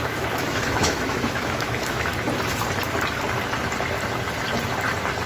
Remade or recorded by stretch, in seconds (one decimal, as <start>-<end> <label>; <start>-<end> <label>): 0.0-2.1 remade; 2.1-5.3 recorded